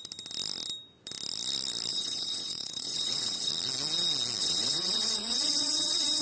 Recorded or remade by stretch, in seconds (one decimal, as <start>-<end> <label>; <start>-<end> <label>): 0.0-1.9 recorded; 1.9-3.5 remade; 3.5-4.4 recorded; 4.4-6.2 remade